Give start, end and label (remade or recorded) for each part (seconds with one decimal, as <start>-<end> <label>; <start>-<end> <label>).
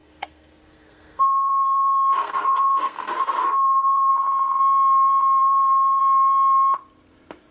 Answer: 0.0-4.1 remade; 4.1-5.4 recorded; 5.4-6.0 remade; 6.0-7.5 recorded